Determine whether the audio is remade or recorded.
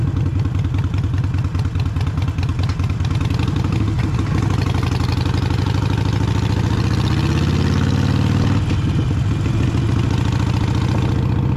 recorded